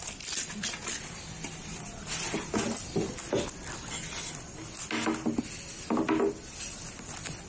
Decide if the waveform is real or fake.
real